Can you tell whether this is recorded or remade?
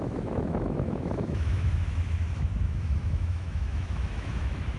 remade